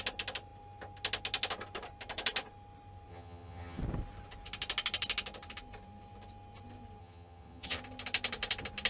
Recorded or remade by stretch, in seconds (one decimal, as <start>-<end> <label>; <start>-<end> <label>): 0.0-3.1 recorded; 3.1-3.8 remade; 3.8-7.0 recorded; 7.0-7.8 remade; 7.8-8.9 recorded